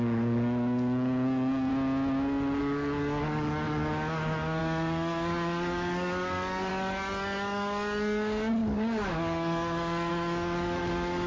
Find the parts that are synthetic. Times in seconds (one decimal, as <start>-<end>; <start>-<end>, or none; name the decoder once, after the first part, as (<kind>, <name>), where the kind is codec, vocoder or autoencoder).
0.0-1.7 (codec, DAC); 2.6-11.3